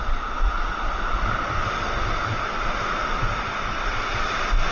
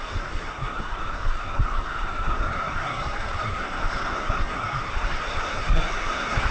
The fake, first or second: second